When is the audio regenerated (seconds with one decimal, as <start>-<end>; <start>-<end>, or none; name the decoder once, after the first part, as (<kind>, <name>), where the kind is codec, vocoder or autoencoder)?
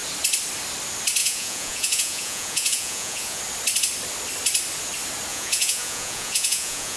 1.2-3.4 (vocoder, Vocos); 5.3-7.0